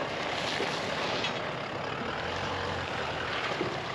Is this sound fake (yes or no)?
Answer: no